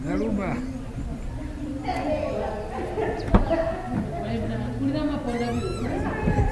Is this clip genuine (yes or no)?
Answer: yes